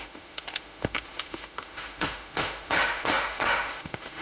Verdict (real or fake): fake